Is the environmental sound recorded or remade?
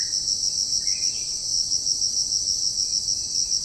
recorded